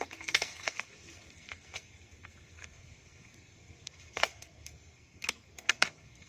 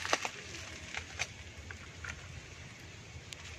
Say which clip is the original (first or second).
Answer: second